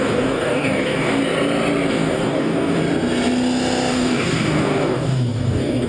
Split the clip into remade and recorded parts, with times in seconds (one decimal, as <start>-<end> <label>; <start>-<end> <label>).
0.0-1.2 remade; 1.2-1.9 recorded; 1.9-2.8 remade; 2.8-3.9 recorded; 3.9-5.9 remade

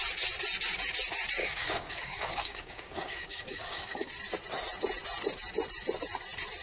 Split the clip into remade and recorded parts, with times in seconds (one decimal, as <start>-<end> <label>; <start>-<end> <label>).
0.0-1.4 recorded; 1.4-4.1 remade; 4.1-6.6 recorded

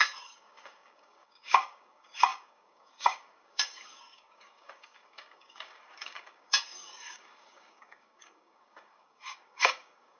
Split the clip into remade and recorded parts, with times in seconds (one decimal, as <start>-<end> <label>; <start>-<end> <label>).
0.0-10.2 remade

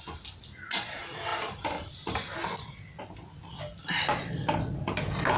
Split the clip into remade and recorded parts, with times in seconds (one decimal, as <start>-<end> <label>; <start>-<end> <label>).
0.0-5.4 recorded

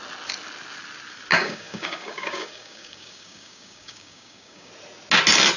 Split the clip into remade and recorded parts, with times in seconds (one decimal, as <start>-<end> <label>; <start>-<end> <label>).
0.0-1.3 recorded; 1.3-4.7 remade; 4.7-5.6 recorded

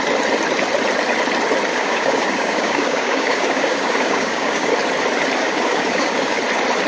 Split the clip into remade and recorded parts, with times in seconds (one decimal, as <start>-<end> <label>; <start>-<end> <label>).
0.0-1.7 recorded; 1.7-4.7 remade; 4.7-5.4 recorded; 5.4-6.4 remade; 6.4-6.9 recorded

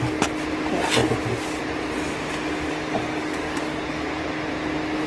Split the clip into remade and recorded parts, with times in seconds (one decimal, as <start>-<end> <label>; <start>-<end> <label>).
0.0-2.6 recorded; 2.6-4.2 remade; 4.2-5.1 recorded

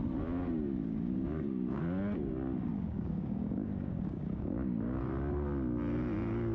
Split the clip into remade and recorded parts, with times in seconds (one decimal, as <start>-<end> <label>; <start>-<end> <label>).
0.0-0.8 recorded; 0.8-1.8 remade; 1.8-2.7 recorded; 2.7-5.0 remade; 5.0-6.5 recorded